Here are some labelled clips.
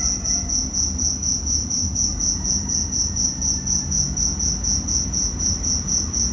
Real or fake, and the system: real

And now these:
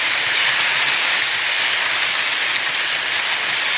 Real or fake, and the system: real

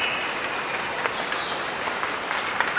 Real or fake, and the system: real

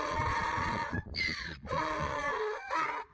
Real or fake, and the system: fake, vocoder, Vocos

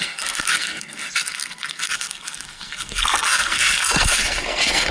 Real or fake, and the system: fake, codec, SNAC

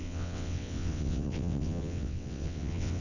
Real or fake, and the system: fake, vocoder, WaveNeXt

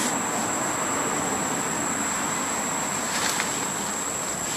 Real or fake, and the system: real